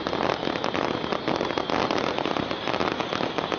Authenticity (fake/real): real